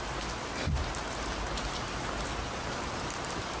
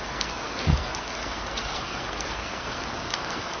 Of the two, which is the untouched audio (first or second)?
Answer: first